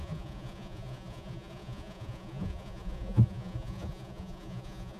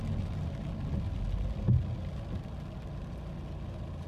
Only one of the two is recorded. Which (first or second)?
second